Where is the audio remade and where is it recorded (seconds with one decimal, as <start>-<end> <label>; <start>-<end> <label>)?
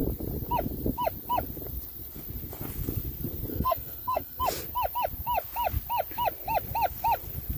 0.0-3.5 recorded; 3.5-4.4 remade; 4.4-7.6 recorded